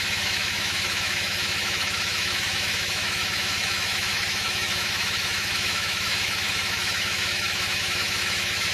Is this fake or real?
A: fake